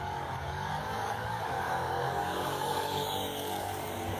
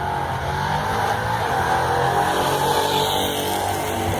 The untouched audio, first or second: second